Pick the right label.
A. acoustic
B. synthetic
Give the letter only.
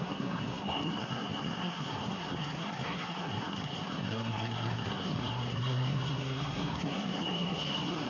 B